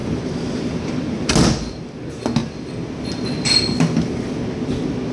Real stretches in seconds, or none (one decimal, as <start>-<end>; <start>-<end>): 0.0-5.1